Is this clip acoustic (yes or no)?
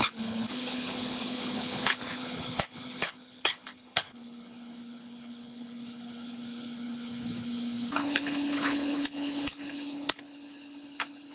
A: no